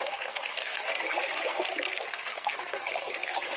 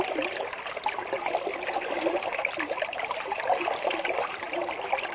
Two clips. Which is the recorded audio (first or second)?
second